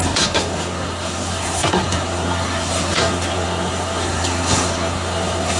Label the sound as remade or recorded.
remade